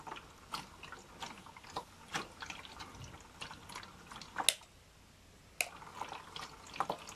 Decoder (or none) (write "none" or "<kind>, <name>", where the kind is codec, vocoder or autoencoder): none